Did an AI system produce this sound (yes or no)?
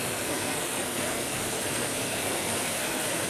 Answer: yes